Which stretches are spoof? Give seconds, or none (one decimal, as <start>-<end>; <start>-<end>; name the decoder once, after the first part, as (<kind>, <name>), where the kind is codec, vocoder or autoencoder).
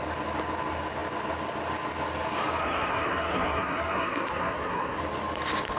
2.6-5.0 (codec, SNAC)